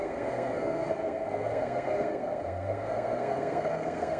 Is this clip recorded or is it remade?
remade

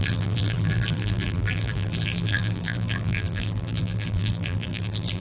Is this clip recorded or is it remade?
remade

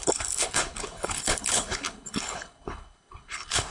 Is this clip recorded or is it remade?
remade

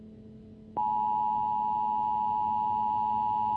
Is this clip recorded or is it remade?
recorded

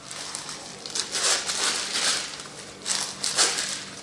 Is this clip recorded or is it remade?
recorded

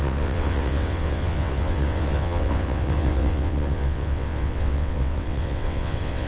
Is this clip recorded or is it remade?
remade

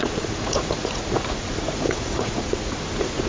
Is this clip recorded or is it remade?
remade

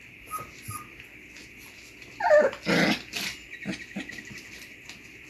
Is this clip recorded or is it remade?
recorded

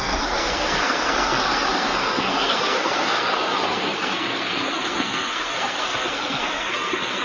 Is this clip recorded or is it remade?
remade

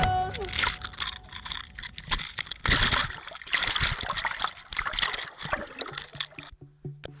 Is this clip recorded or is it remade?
recorded